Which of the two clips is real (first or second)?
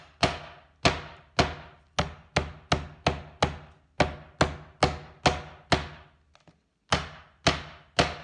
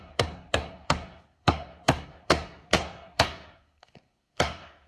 first